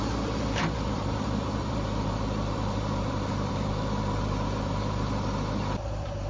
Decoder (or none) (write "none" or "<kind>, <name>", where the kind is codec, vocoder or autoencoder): vocoder, BigVGAN v2